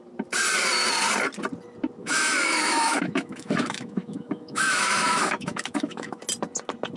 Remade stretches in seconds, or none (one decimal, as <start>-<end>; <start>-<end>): 2.0-6.2